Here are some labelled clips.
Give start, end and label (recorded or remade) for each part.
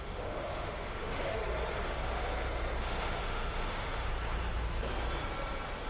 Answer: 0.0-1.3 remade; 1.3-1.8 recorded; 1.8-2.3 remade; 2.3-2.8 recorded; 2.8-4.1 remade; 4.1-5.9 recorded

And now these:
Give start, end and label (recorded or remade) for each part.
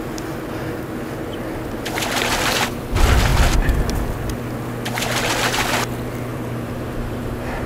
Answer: 0.0-6.3 recorded; 6.3-7.7 remade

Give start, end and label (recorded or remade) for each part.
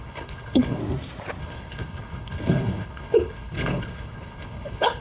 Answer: 0.0-0.8 remade; 0.8-1.4 recorded; 1.4-5.0 remade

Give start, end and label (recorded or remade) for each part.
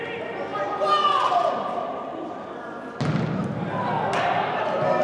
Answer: 0.0-5.0 recorded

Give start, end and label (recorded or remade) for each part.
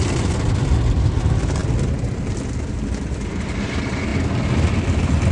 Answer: 0.0-5.3 recorded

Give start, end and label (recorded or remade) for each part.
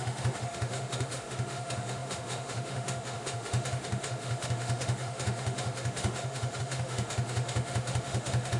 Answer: 0.0-8.6 remade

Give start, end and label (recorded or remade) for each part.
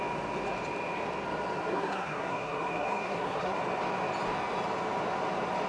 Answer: 0.0-1.7 recorded; 1.7-3.6 remade; 3.6-5.7 recorded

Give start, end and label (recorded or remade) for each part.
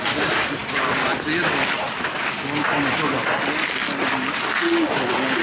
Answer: 0.0-5.4 recorded